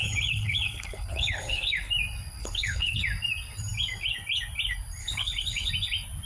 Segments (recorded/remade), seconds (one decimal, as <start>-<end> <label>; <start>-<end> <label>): 0.0-1.9 remade; 1.9-2.4 recorded; 2.4-3.0 remade; 3.0-5.0 recorded; 5.0-5.7 remade; 5.7-6.3 recorded